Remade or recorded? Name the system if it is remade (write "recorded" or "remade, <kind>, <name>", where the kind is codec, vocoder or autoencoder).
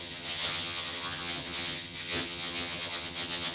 remade, vocoder, HiFi-GAN